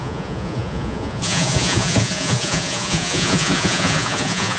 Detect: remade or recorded remade